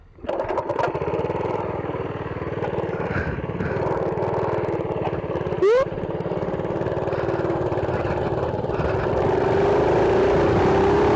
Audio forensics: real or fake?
real